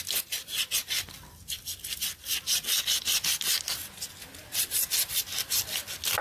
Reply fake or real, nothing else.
real